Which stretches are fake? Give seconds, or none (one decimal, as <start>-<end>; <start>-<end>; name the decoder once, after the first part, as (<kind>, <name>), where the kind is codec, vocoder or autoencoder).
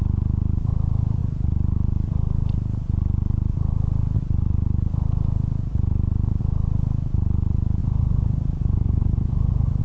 7.8-9.8 (vocoder, Vocos)